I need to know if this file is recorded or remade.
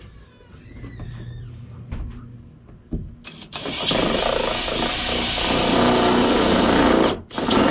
recorded